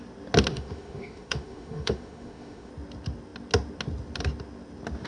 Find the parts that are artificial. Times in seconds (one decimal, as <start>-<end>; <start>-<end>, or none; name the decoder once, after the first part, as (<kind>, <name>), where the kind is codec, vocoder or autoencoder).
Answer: 0.5-2.7 (autoencoder, DAC-VAE)